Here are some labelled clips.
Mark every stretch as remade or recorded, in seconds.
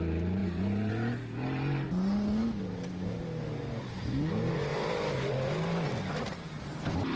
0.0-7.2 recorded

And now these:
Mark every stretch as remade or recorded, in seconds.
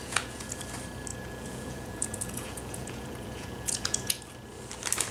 0.0-0.6 remade; 0.6-1.1 recorded; 1.1-4.2 remade; 4.2-5.1 recorded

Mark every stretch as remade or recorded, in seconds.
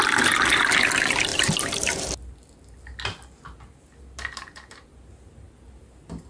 0.0-1.3 recorded; 1.3-2.1 remade; 2.1-6.3 recorded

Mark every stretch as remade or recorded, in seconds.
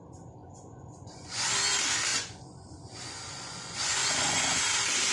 0.0-0.4 recorded; 0.4-1.5 remade; 1.5-2.1 recorded; 2.1-4.6 remade; 4.6-5.1 recorded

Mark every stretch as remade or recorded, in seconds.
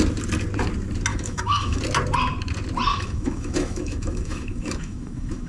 0.0-1.1 recorded; 1.1-1.8 remade; 1.8-2.9 recorded; 2.9-5.5 remade